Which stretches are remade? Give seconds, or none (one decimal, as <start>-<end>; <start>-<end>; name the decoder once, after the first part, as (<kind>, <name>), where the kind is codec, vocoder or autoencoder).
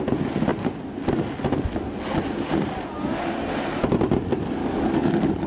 4.6-5.5 (codec, DAC)